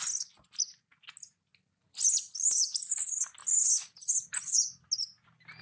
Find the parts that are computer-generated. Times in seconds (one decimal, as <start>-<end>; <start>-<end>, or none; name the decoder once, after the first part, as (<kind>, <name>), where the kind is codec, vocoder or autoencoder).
none